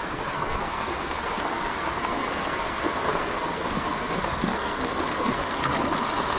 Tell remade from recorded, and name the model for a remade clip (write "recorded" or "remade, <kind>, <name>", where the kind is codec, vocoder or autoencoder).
remade, codec, SNAC